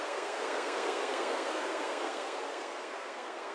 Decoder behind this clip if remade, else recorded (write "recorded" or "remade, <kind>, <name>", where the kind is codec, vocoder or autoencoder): remade, codec, SNAC